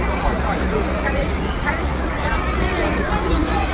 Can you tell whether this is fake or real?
fake